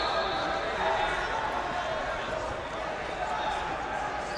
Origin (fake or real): real